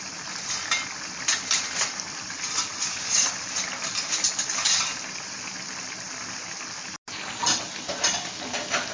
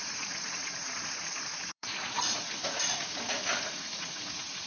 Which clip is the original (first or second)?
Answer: first